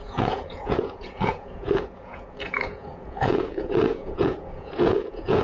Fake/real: fake